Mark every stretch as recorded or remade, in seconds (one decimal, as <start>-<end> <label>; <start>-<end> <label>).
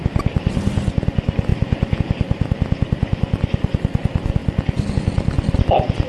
0.0-6.1 recorded